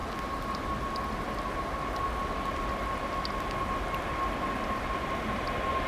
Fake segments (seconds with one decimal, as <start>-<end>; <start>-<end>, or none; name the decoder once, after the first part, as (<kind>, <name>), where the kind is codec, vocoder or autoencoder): none